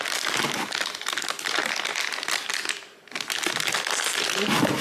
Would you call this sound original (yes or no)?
yes